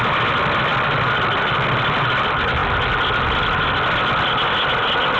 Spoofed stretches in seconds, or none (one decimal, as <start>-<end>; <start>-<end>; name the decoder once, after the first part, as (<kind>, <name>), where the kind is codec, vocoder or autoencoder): none